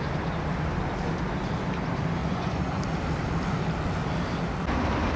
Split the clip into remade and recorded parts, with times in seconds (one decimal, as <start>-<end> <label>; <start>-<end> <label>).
0.0-2.2 recorded; 2.2-2.8 remade; 2.8-5.2 recorded